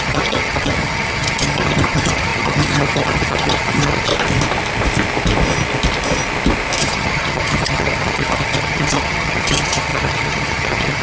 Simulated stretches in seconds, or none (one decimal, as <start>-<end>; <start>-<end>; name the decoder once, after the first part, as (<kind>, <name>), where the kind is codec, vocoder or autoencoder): 0.0-4.1 (vocoder, HiFi-GAN); 6.8-11.0